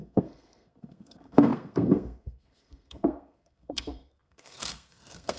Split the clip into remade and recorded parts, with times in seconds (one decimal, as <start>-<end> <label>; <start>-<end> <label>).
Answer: 0.0-5.4 remade